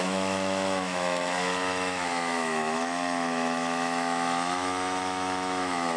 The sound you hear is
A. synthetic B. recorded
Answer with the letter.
A